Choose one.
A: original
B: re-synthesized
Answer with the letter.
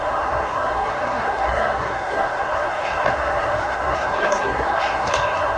B